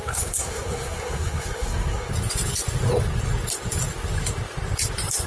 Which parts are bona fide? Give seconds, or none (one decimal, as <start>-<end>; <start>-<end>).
2.1-5.3

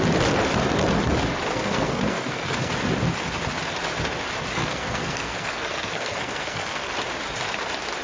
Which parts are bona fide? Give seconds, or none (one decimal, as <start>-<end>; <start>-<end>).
0.0-1.5; 2.7-4.6; 6.9-8.0

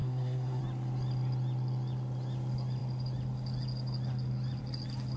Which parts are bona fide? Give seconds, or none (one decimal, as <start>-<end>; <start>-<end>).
0.6-5.2

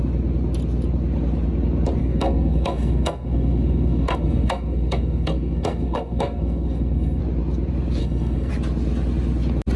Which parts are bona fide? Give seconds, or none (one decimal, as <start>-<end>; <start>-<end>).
0.0-2.0; 7.2-8.0; 8.5-9.8

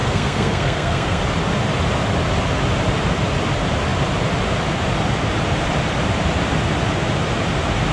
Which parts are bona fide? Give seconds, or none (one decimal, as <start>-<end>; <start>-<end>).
1.2-7.9

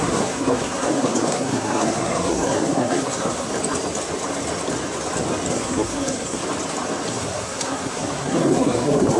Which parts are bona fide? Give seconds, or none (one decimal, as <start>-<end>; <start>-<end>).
3.5-5.5; 6.4-7.1